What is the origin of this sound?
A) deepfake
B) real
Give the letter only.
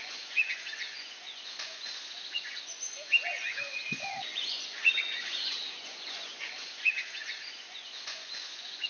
A